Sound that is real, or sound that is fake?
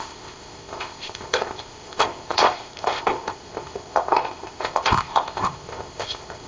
fake